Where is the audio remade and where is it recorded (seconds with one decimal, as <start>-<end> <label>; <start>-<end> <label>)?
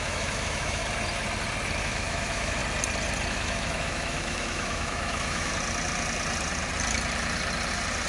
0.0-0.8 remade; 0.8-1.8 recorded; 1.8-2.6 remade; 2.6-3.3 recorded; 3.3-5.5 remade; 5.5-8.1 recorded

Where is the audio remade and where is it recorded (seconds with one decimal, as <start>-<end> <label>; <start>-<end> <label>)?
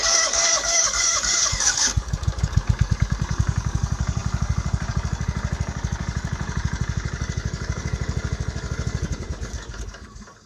0.0-10.5 remade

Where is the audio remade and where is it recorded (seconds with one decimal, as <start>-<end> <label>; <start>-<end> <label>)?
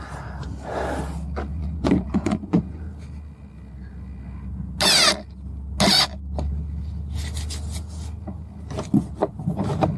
0.0-1.5 recorded; 1.5-2.8 remade; 2.8-10.0 recorded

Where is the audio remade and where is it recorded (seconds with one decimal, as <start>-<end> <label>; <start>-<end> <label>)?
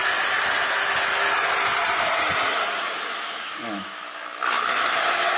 0.0-2.8 recorded; 2.8-5.4 remade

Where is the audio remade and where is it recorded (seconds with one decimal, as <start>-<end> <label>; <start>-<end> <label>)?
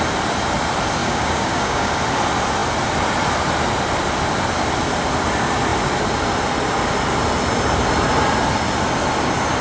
0.0-1.0 recorded; 1.0-1.9 remade; 1.9-9.6 recorded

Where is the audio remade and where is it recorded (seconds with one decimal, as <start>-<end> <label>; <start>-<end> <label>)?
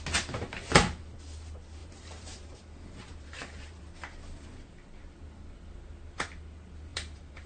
0.0-1.8 recorded; 1.8-3.8 remade; 3.8-6.9 recorded; 6.9-7.5 remade